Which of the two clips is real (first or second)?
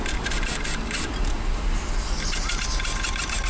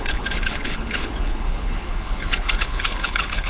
first